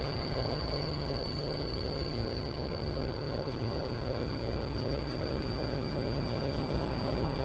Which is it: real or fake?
fake